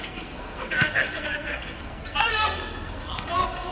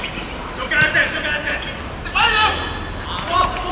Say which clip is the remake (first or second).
first